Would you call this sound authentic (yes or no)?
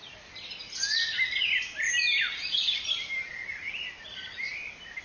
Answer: yes